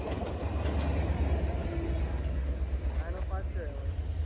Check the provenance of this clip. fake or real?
real